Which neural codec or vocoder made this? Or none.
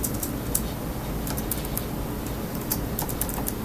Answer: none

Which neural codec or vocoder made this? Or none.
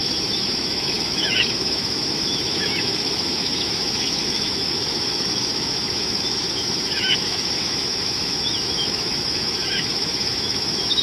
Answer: autoencoder, DAC-VAE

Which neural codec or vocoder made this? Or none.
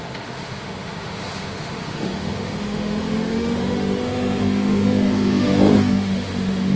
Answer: autoencoder, DAC-VAE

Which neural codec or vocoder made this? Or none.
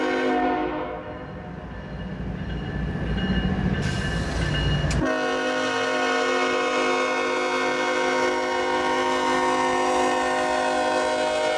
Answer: none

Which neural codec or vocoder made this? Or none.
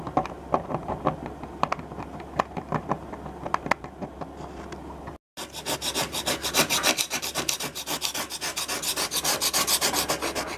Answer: none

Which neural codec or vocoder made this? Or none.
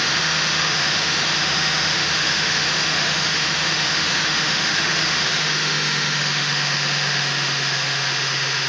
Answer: autoencoder, DAC-VAE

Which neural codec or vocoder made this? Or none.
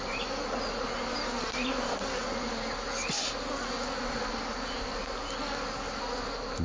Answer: none